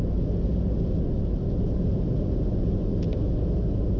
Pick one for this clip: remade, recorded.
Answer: recorded